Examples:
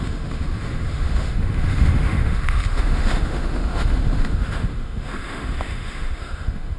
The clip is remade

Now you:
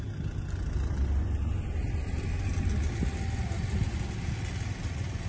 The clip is recorded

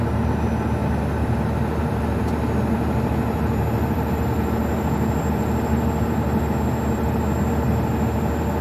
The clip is recorded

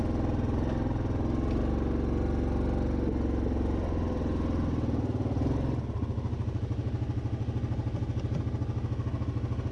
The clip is recorded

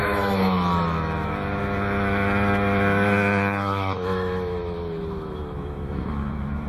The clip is remade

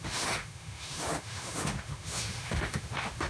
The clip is remade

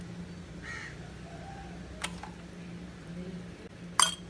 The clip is recorded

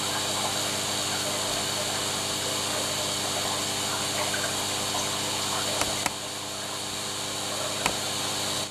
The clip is recorded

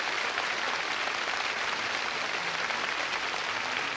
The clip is recorded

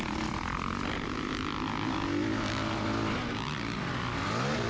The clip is recorded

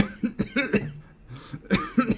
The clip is recorded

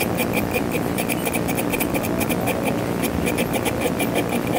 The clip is recorded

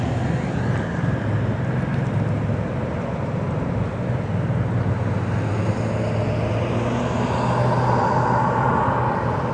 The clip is recorded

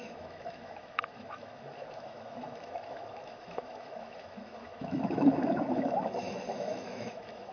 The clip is remade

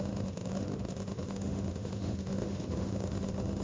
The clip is remade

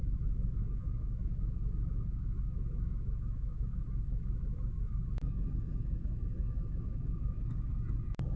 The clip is remade